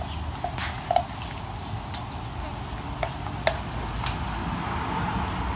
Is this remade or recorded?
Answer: recorded